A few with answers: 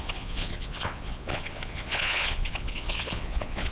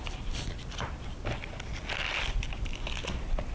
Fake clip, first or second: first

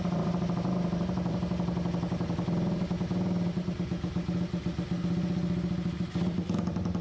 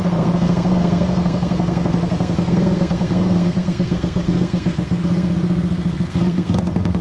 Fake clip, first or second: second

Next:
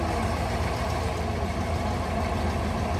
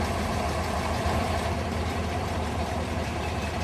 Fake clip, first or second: second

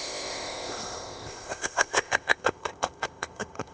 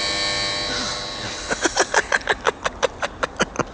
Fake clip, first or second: first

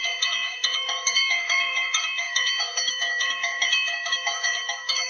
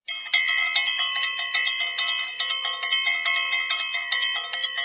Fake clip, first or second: first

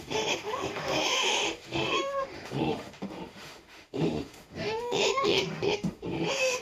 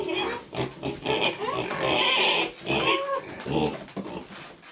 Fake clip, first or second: first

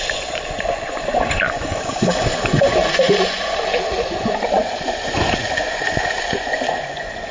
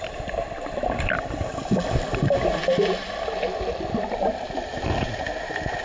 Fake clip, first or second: first